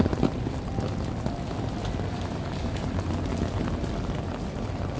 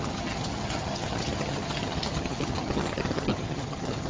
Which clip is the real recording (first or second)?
first